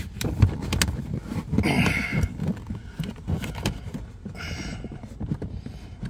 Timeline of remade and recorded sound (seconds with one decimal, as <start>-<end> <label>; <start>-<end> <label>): 0.0-2.1 recorded; 2.1-3.3 remade; 3.3-4.7 recorded; 4.7-5.3 remade; 5.3-6.1 recorded